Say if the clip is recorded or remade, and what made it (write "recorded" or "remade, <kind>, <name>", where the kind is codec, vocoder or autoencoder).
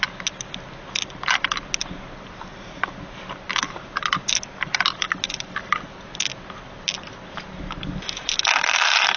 recorded